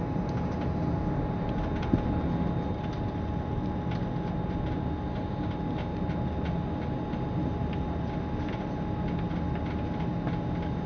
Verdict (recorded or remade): recorded